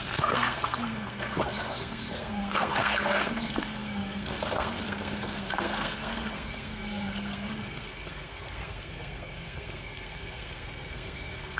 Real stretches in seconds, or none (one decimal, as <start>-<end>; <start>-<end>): none